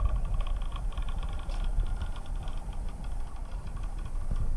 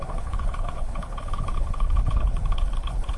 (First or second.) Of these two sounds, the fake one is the second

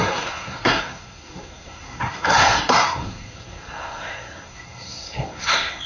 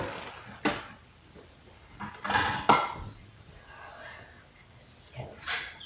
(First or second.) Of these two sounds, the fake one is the first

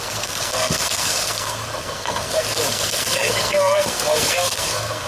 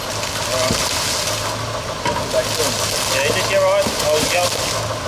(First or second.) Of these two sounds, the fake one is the first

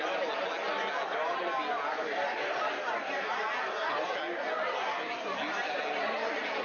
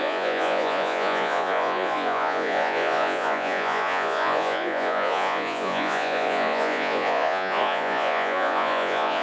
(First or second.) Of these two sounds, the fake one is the second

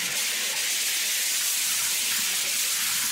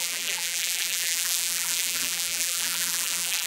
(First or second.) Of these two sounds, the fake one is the second